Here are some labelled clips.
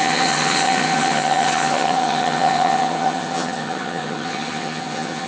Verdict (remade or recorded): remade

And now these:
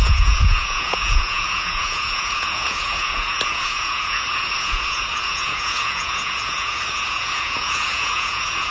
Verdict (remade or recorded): remade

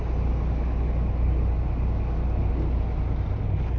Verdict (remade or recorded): recorded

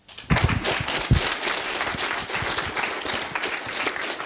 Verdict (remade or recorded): recorded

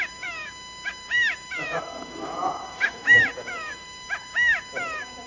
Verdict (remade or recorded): remade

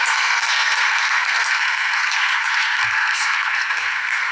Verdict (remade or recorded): remade